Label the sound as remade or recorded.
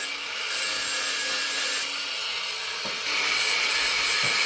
recorded